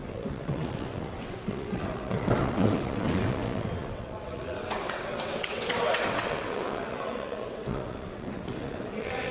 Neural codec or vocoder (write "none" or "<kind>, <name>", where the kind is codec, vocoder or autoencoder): vocoder, WaveNeXt